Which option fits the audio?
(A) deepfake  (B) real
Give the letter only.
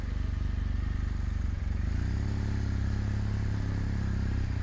B